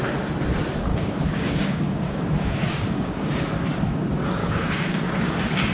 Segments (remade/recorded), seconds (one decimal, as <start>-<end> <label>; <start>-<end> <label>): 0.0-0.9 recorded; 0.9-3.4 remade; 3.4-4.4 recorded; 4.4-5.0 remade; 5.0-5.7 recorded